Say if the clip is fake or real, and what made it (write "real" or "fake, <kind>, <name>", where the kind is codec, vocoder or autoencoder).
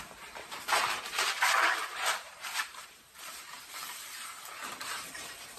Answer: fake, vocoder, BigVGAN v2